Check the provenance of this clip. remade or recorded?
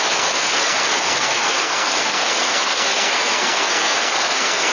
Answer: remade